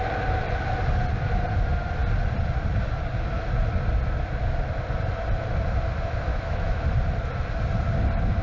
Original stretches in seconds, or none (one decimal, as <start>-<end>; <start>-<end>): 0.0-6.3; 6.8-8.4